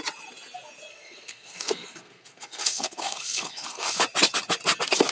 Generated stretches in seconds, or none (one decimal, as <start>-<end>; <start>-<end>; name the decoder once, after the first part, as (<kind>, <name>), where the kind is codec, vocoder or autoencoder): 0.9-4.0 (codec, SNAC)